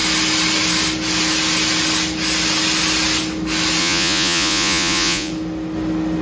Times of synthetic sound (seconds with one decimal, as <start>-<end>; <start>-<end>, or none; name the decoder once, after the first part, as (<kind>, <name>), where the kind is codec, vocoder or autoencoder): 3.8-5.3 (vocoder, Vocos)